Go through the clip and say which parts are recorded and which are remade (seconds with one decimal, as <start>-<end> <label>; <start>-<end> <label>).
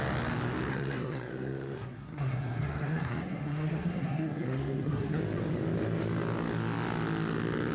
0.0-0.7 recorded; 0.7-5.2 remade; 5.2-7.7 recorded